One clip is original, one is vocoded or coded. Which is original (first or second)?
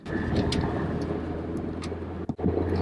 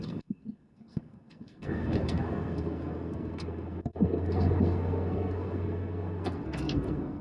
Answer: first